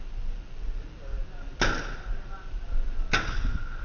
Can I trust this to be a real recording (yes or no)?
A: yes